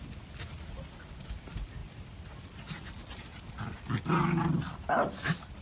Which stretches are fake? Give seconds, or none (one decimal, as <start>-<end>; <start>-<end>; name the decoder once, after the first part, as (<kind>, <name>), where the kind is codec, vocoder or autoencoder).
none